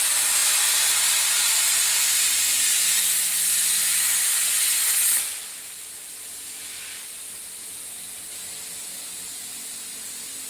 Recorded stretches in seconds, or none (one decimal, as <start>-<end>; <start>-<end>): 0.0-10.5